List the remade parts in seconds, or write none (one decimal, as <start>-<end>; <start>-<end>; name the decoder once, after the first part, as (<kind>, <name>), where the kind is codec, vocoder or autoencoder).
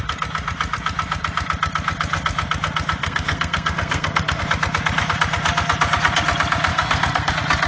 3.0-4.4 (codec, SNAC); 6.7-7.3